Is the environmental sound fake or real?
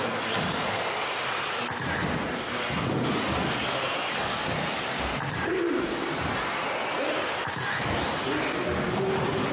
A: real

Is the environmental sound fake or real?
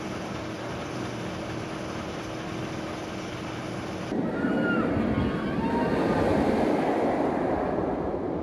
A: real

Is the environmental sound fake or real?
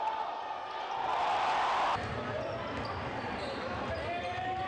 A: real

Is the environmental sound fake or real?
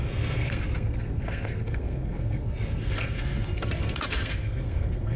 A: fake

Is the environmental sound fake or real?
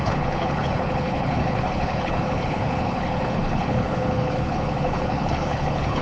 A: fake